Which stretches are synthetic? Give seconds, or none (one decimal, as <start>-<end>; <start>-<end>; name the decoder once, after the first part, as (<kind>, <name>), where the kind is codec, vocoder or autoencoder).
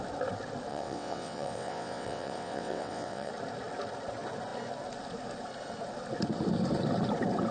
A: 0.7-3.3 (vocoder, WaveNeXt)